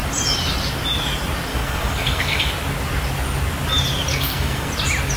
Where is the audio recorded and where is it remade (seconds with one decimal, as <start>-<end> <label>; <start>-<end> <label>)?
0.0-1.5 recorded; 1.5-2.5 remade; 2.5-4.1 recorded; 4.1-4.7 remade; 4.7-5.2 recorded